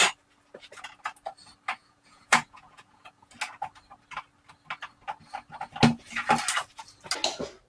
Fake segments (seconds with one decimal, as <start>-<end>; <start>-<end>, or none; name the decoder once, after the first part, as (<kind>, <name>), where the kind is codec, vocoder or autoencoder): 1.8-3.3 (vocoder, Vocos)